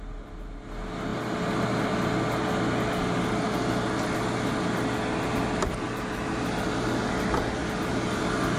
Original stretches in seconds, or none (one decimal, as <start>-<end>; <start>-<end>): 0.0-8.6